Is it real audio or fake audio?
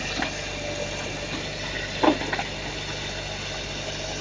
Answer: real